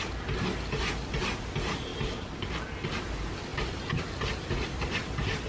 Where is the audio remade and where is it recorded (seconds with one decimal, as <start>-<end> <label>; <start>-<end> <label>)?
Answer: 0.0-5.5 recorded